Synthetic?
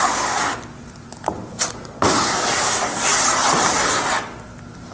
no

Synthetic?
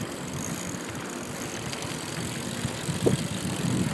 no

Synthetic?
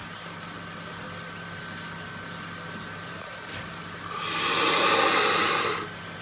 no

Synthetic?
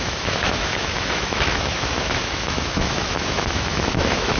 yes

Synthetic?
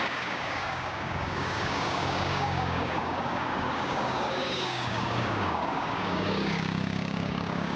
yes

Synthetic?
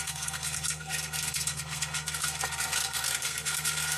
yes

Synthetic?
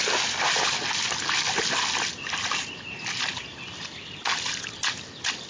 no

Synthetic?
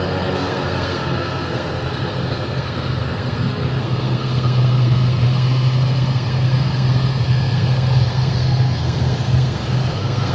yes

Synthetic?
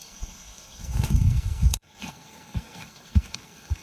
yes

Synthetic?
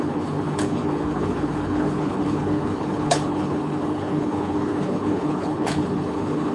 yes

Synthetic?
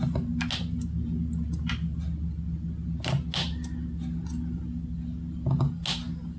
no